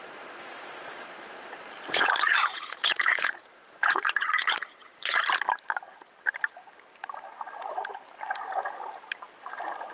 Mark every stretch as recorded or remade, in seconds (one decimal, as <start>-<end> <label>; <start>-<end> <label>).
0.0-5.2 remade; 5.2-9.9 recorded